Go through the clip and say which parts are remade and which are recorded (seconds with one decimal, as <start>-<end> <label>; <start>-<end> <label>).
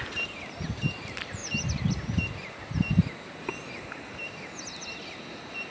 0.0-5.7 recorded